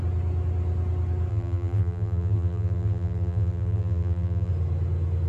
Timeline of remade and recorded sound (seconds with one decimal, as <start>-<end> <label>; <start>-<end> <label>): 0.0-1.3 recorded; 1.3-4.5 remade; 4.5-5.3 recorded